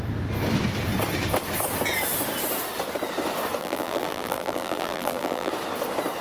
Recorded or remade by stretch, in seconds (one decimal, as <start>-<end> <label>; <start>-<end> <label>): 0.0-3.6 recorded; 3.6-5.5 remade; 5.5-6.2 recorded